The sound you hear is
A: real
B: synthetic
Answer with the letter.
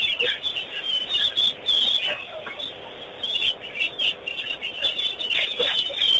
A